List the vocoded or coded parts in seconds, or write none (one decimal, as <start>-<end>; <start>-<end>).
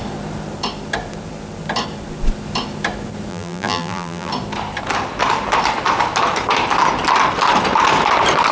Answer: 3.3-4.3